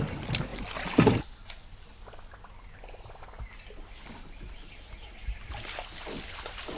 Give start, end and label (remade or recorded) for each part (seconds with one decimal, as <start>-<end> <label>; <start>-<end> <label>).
0.0-6.8 recorded